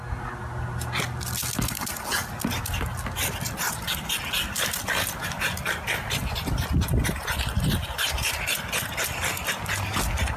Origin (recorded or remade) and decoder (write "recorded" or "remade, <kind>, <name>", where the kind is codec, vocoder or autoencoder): recorded